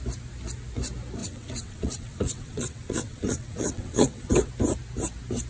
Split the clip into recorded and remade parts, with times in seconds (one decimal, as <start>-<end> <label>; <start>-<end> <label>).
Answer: 0.0-1.2 recorded; 1.2-4.5 remade; 4.5-5.5 recorded